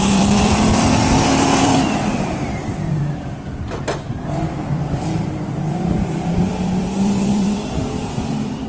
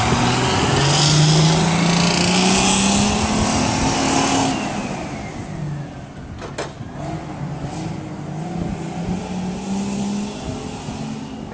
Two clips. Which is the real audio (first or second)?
second